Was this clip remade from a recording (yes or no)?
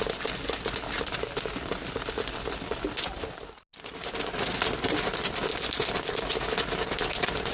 no